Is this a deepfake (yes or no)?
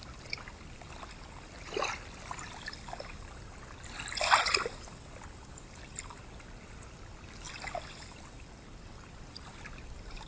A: no